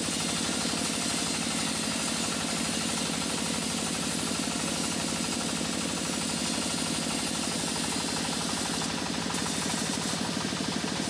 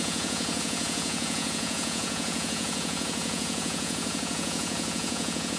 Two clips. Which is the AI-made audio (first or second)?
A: second